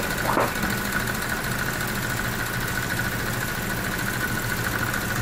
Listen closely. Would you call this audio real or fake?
real